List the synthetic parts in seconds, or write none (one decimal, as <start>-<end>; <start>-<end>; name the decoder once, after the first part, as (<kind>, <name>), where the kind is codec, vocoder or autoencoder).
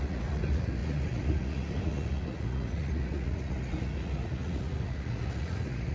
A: 0.0-5.9 (vocoder, Vocos)